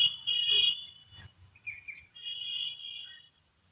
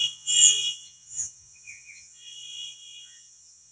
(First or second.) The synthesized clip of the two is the second